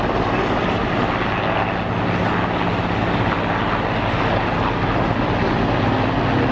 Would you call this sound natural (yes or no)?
yes